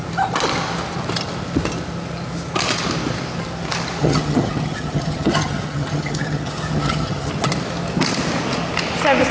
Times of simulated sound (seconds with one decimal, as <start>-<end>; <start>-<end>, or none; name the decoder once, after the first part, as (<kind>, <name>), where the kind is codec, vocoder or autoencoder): 4.0-7.3 (vocoder, HiFi-GAN)